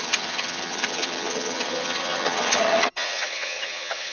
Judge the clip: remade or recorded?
remade